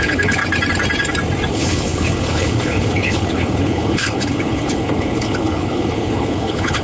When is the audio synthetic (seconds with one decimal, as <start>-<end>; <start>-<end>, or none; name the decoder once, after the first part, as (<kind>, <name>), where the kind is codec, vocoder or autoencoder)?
0.0-0.4 (codec, HILCodec); 1.5-6.8